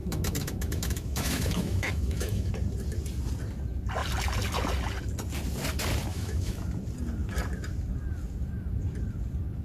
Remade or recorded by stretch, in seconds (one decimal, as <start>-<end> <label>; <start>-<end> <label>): 0.0-2.5 remade; 2.5-6.1 recorded; 6.1-6.6 remade; 6.6-9.6 recorded